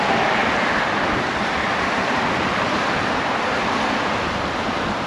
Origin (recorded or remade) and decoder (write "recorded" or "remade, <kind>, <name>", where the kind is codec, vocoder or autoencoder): recorded